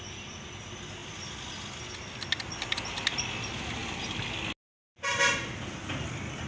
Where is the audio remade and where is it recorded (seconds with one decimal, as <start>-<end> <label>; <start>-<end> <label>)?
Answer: 0.0-6.5 recorded